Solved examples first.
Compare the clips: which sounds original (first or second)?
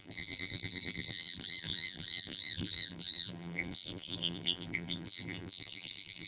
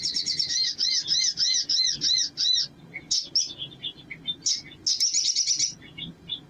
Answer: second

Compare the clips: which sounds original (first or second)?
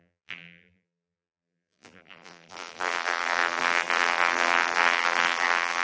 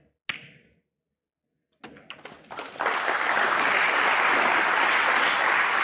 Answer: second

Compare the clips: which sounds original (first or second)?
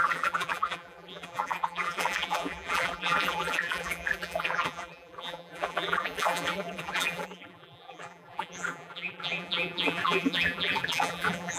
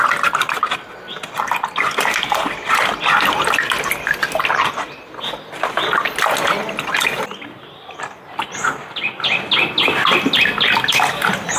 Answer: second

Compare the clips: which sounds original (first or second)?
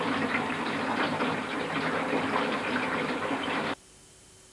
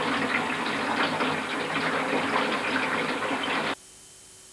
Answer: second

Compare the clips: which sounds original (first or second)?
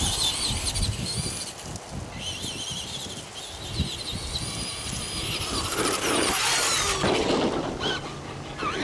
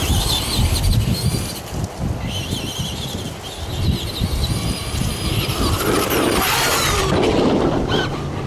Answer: first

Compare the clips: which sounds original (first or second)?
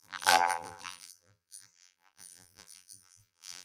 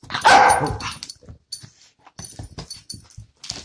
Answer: second